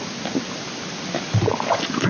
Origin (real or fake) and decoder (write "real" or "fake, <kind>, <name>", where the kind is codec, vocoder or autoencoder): real